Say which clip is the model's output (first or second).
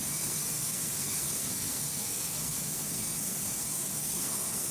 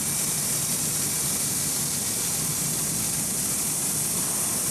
first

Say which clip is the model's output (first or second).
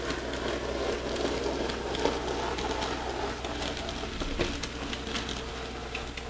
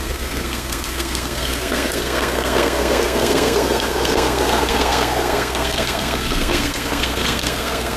second